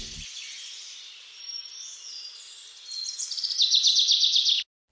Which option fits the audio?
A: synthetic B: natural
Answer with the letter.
B